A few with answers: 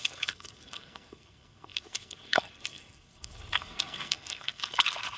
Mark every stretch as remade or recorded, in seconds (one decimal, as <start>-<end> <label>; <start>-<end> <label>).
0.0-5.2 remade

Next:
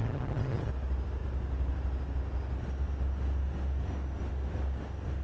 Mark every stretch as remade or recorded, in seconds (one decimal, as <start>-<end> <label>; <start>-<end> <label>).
0.0-0.7 remade; 0.7-5.2 recorded

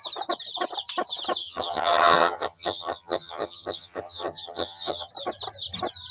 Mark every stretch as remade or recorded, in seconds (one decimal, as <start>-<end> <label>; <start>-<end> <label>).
0.0-1.4 recorded; 1.4-5.1 remade; 5.1-6.1 recorded

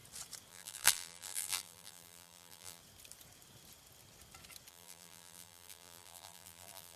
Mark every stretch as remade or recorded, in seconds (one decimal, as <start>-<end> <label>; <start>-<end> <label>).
0.0-0.5 recorded; 0.5-2.8 remade; 2.8-4.7 recorded; 4.7-7.0 remade

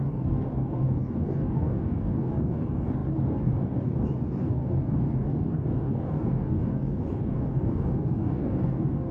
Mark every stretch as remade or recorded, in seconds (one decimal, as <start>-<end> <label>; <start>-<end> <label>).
0.0-9.1 remade